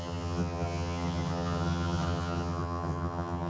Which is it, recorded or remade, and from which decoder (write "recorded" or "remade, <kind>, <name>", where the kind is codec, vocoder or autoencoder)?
remade, vocoder, HiFi-GAN